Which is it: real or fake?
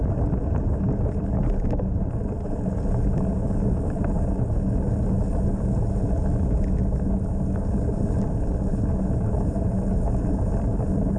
real